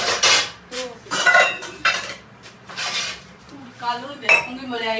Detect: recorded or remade remade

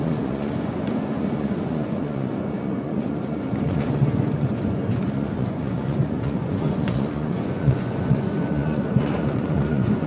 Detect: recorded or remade remade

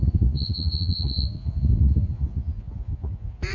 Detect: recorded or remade remade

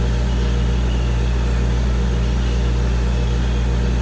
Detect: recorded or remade recorded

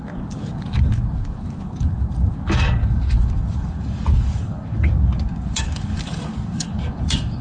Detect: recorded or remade remade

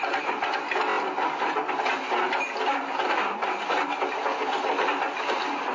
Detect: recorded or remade recorded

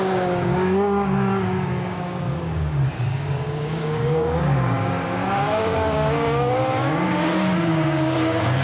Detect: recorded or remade remade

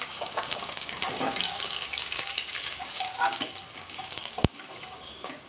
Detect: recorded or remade remade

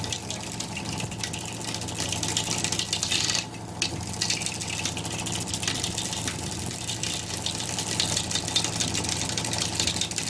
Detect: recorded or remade recorded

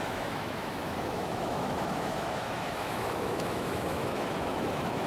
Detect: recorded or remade remade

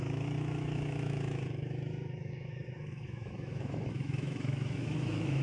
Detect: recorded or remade remade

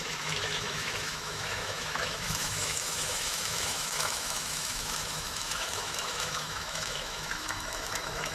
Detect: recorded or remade remade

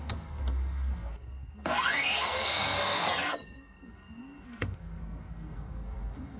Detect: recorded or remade remade